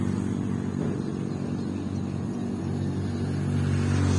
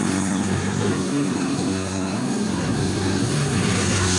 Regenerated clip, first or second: second